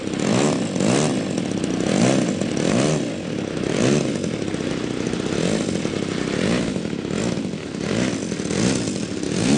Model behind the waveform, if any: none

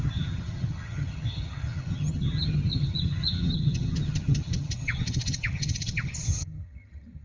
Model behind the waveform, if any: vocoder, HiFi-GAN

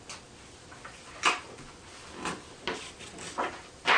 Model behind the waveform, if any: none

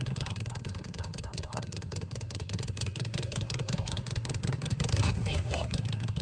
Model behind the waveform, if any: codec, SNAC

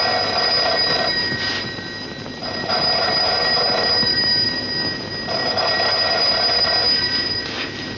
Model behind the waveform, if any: none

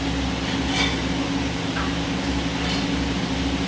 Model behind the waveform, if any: none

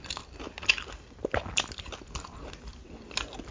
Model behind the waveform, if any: none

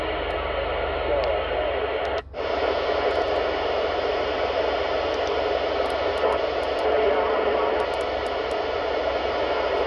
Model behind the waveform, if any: none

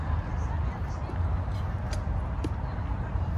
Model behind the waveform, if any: none